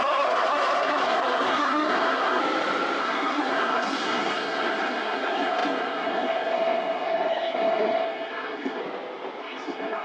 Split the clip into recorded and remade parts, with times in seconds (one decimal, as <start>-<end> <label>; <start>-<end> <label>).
0.0-2.4 remade; 2.4-3.0 recorded; 3.0-8.8 remade; 8.8-9.4 recorded; 9.4-10.0 remade